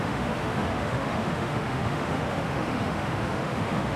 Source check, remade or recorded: remade